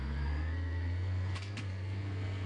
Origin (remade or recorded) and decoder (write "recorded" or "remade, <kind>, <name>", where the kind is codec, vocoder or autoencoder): remade, codec, SNAC